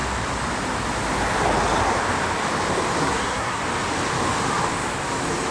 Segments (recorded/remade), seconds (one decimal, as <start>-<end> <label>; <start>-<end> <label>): 0.0-3.0 recorded; 3.0-3.6 remade; 3.6-5.5 recorded